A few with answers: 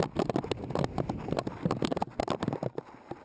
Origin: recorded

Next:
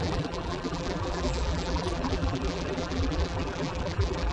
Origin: remade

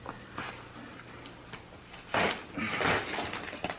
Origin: recorded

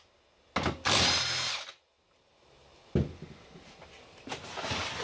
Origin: recorded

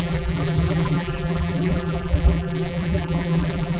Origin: remade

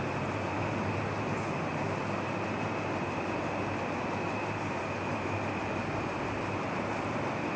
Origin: recorded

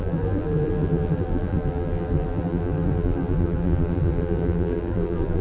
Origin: remade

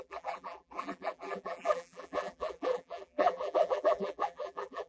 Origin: remade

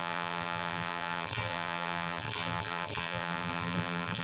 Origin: remade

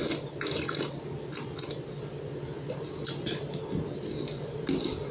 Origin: recorded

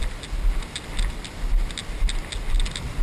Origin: recorded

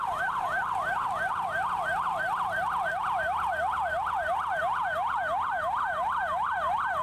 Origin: recorded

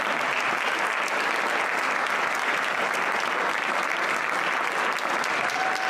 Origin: recorded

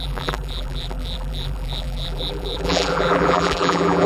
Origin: remade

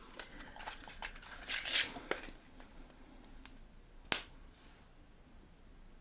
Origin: recorded